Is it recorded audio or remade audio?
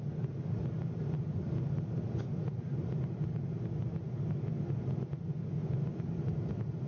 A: recorded